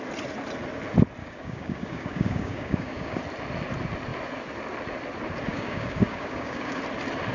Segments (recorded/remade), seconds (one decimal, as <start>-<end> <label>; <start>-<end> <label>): 0.0-1.2 recorded; 1.2-3.2 remade; 3.2-5.5 recorded; 5.5-6.8 remade; 6.8-7.3 recorded